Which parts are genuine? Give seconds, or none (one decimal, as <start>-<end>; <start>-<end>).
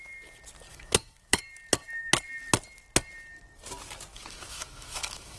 0.0-0.7; 1.4-4.1